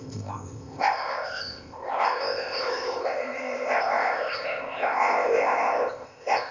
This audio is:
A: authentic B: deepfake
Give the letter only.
B